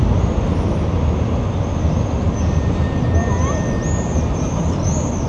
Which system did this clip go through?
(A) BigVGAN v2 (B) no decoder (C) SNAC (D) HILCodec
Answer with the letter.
B